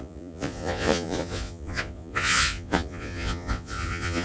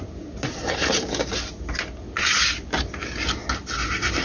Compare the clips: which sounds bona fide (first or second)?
second